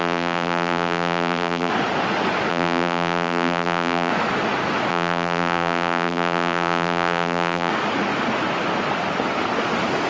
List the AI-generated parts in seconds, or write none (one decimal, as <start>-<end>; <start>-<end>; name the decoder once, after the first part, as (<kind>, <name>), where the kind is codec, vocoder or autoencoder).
0.0-1.7 (vocoder, BigVGAN v2); 2.5-4.1; 4.9-7.7